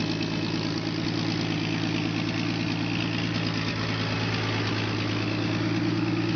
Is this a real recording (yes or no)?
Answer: yes